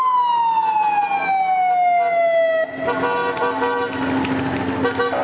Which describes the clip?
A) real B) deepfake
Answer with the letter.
A